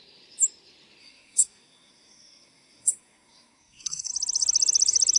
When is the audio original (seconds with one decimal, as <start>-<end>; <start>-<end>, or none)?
0.0-1.0; 4.1-5.2